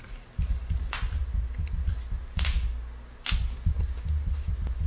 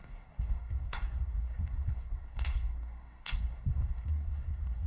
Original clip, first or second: first